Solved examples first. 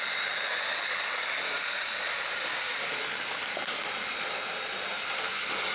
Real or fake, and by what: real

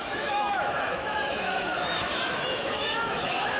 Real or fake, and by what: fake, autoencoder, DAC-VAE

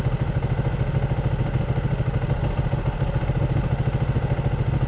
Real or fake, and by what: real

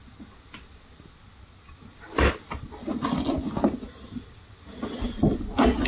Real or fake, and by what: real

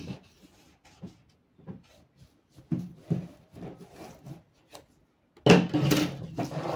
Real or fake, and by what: real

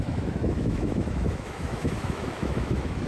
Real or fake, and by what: fake, autoencoder, DAC-VAE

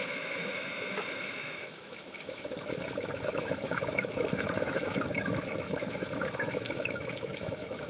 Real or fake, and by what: fake, autoencoder, DAC-VAE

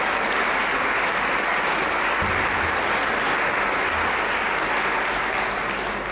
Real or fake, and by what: real